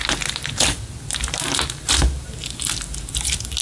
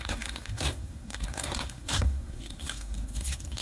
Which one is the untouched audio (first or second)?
first